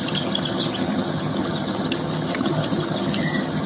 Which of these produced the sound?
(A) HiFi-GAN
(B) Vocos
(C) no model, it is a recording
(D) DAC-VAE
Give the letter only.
A